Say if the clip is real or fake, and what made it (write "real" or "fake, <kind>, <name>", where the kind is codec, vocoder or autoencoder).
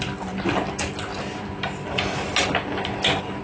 real